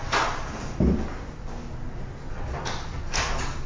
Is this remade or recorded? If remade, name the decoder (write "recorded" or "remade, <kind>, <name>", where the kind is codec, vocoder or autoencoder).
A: recorded